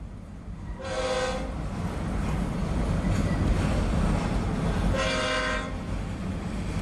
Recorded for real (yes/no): yes